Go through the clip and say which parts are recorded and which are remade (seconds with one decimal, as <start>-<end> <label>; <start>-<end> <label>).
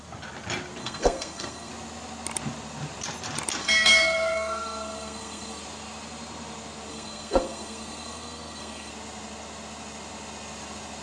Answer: 0.0-0.8 recorded; 0.8-1.7 remade; 1.7-3.6 recorded; 3.6-5.6 remade; 5.6-6.9 recorded; 6.9-8.9 remade; 8.9-11.0 recorded